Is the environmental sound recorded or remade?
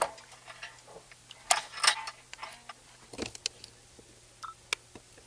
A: recorded